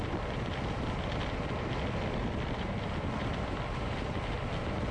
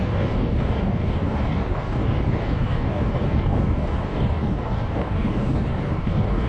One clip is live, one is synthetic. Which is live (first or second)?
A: first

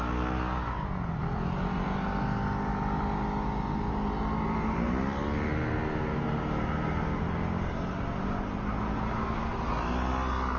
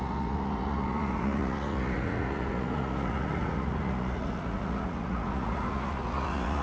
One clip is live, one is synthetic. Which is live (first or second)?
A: first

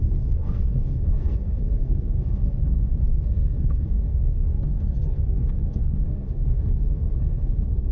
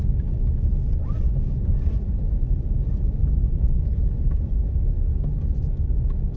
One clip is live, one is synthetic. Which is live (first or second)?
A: second